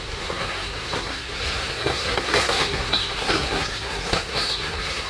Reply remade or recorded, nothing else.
remade